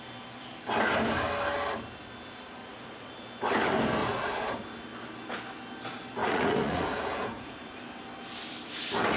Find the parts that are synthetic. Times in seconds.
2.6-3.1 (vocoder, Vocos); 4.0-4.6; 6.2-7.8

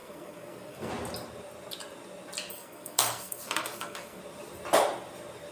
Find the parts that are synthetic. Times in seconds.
0.0-0.9 (codec, SNAC); 2.5-4.2

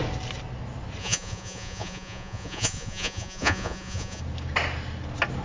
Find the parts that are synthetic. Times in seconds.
1.0-4.2 (vocoder, Vocos)

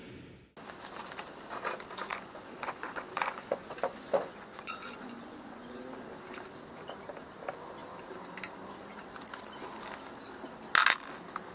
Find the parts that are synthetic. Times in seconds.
2.1-5.8 (vocoder, Vocos)

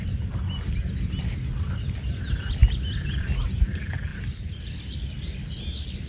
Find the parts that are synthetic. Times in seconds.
none

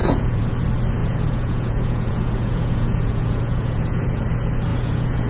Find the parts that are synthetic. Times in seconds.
0.0-0.5 (vocoder, Vocos); 1.0-4.2; 4.7-5.3

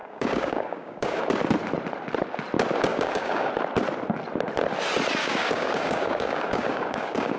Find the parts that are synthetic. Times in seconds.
0.0-1.2 (codec, DAC); 2.9-3.5; 5.2-7.4

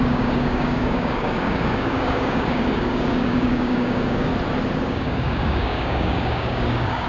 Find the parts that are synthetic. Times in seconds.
0.0-4.3 (codec, DAC); 4.8-7.1